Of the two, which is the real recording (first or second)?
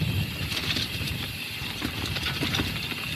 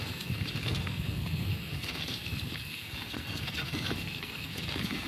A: first